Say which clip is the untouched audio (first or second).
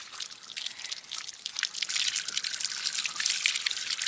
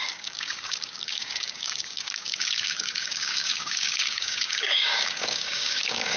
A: first